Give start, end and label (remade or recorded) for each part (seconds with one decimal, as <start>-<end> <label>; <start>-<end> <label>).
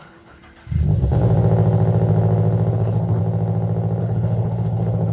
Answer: 0.0-0.4 remade; 0.4-2.7 recorded; 2.7-3.2 remade; 3.2-4.0 recorded; 4.0-5.1 remade